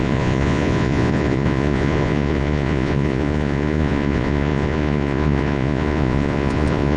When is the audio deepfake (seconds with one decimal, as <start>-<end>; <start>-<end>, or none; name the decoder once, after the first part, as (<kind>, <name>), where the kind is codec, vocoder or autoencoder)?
0.0-7.0 (vocoder, Vocos)